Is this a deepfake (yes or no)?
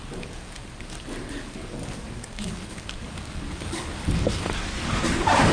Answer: yes